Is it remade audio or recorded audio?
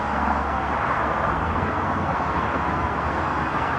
remade